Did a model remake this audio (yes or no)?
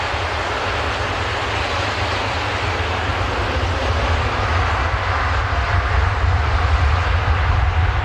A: no